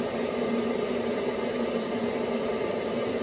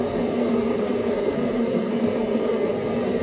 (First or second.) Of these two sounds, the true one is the first